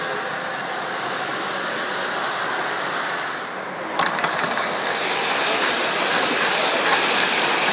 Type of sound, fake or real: real